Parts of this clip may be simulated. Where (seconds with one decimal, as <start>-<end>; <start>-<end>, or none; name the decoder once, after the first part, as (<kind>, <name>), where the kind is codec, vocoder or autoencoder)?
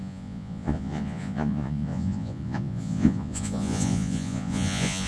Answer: 0.0-5.1 (vocoder, Vocos)